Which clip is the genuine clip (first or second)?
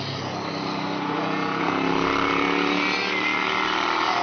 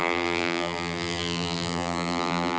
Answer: first